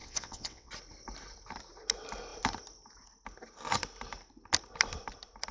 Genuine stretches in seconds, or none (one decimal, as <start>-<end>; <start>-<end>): 0.7-5.5